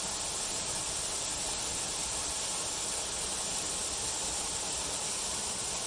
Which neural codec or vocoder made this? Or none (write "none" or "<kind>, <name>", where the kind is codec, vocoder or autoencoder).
none